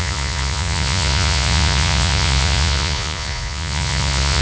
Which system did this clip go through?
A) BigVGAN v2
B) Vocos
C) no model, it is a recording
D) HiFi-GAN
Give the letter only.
B